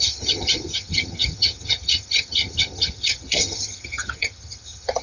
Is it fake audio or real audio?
fake